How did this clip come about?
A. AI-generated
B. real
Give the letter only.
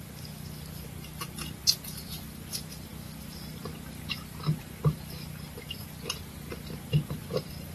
B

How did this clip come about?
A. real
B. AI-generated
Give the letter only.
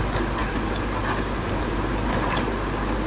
A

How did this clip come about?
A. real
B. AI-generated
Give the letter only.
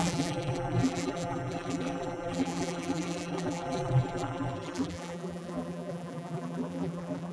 B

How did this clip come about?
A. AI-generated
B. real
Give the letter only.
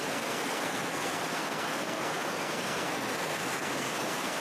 A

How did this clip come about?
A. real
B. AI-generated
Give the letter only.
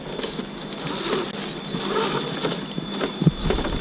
A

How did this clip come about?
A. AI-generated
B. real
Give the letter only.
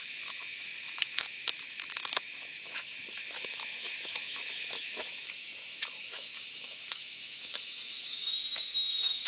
A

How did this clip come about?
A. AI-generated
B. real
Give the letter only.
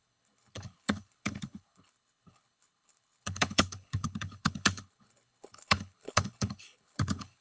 A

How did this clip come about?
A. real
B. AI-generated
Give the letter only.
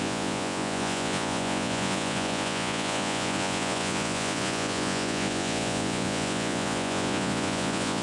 B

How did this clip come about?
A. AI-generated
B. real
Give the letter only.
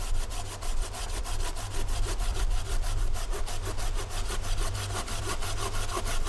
B